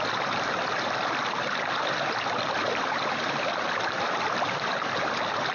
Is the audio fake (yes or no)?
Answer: no